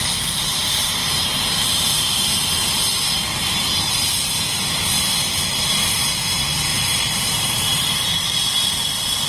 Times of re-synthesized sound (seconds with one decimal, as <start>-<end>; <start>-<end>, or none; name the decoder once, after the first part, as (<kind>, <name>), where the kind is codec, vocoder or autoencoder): none